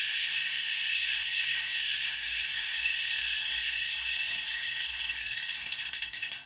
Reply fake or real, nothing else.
fake